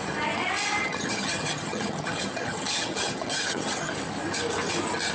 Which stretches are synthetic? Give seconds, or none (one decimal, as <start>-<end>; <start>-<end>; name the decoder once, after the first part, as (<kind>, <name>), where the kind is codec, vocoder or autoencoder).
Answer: 0.8-3.9 (vocoder, HiFi-GAN)